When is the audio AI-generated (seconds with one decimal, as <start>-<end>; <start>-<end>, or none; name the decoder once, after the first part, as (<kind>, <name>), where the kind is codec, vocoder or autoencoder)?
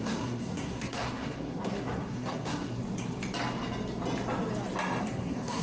0.0-2.8 (codec, SNAC); 5.0-5.6